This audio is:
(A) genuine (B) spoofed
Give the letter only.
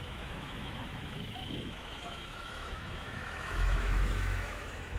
B